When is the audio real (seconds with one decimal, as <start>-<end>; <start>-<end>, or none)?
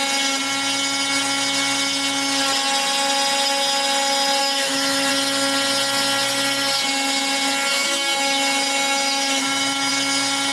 0.0-4.4; 5.1-7.7; 9.9-10.5